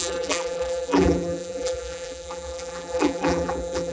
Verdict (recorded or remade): remade